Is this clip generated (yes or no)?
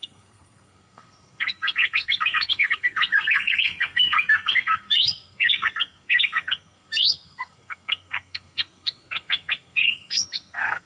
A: yes